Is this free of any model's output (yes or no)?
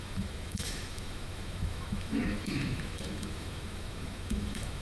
no